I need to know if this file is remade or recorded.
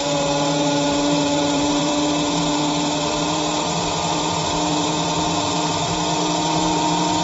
remade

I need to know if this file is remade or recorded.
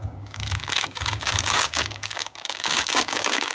remade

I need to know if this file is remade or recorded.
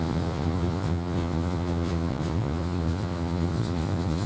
remade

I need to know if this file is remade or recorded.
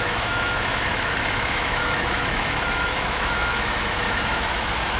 remade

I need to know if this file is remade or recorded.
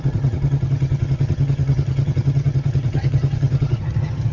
remade